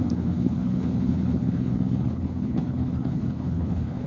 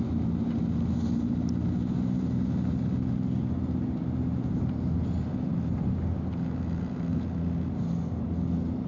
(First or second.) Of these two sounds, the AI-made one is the first